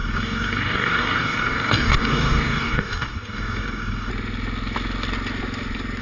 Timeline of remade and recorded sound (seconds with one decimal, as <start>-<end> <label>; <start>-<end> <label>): 0.0-4.1 remade; 4.1-6.0 recorded